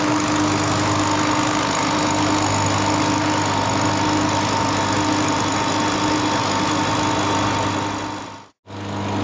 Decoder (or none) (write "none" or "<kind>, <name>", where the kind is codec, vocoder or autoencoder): none